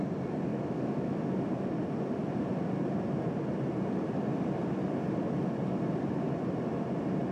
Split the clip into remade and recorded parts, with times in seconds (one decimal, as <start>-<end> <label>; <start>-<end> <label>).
0.0-0.5 recorded; 0.5-1.2 remade; 1.2-7.3 recorded